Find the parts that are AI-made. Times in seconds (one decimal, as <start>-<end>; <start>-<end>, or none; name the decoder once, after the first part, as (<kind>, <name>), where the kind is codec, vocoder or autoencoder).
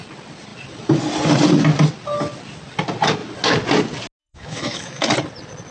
4.2-5.1 (autoencoder, DAC-VAE)